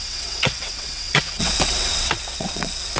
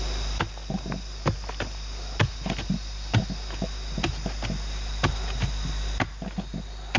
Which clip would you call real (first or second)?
second